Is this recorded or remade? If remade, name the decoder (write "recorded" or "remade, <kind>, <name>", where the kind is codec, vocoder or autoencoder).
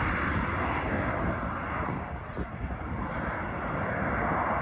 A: recorded